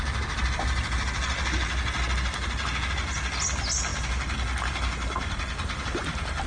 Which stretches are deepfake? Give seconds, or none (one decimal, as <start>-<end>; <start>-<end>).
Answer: none